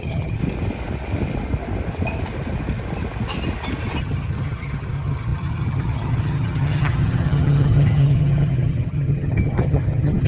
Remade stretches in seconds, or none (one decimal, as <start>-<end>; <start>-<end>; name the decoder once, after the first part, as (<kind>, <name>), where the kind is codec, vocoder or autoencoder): 0.0-0.4 (vocoder, HiFi-GAN); 4.0-10.3